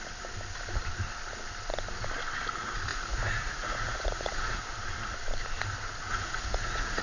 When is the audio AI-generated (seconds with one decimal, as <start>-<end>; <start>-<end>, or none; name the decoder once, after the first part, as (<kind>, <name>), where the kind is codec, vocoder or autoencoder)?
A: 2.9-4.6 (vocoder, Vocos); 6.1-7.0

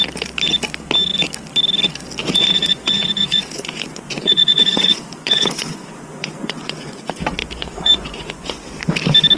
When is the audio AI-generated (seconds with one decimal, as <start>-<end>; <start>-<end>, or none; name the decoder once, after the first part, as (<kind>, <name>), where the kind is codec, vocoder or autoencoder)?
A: 2.2-7.0 (vocoder, Vocos); 7.4-8.6

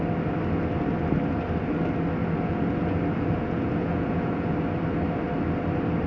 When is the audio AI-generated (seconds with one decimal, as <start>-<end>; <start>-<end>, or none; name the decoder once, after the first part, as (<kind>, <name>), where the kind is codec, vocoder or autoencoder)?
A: 2.2-4.5 (vocoder, Vocos)